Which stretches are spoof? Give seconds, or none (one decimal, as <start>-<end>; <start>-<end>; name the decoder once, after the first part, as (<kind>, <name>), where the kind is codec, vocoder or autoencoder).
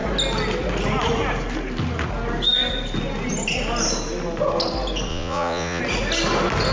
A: 5.1-5.8 (vocoder, Vocos)